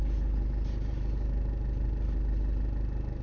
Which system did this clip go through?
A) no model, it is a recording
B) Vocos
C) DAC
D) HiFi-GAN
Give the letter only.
A